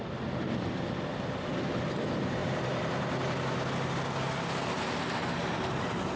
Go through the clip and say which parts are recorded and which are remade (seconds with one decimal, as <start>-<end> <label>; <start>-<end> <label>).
0.0-6.2 recorded